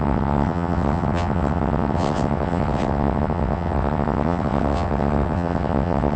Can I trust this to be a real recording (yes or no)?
no